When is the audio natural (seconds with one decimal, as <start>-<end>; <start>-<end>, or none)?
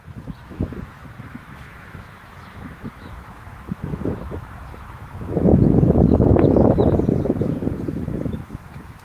5.5-7.4